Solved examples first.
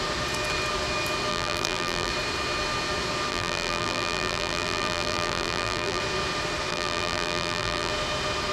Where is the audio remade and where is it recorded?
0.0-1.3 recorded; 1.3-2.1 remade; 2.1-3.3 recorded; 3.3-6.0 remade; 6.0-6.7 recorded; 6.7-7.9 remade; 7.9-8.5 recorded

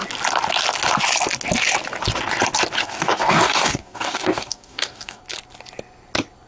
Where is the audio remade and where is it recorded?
0.0-2.8 recorded; 2.8-5.2 remade; 5.2-6.5 recorded

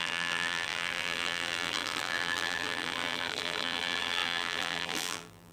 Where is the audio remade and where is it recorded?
0.0-5.5 remade

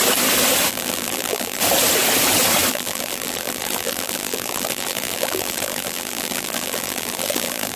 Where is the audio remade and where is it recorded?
0.0-0.7 recorded; 0.7-1.6 remade; 1.6-2.7 recorded; 2.7-7.8 remade